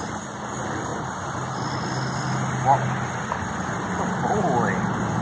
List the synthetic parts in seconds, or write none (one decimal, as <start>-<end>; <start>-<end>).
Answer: none